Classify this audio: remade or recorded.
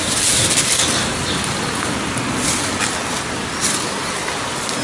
recorded